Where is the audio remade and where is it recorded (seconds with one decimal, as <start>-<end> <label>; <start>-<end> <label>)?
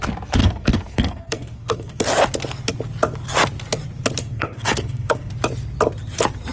0.0-0.4 recorded; 0.4-2.0 remade; 2.0-4.2 recorded; 4.2-5.3 remade; 5.3-6.5 recorded